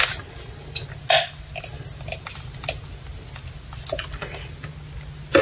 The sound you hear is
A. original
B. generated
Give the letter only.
A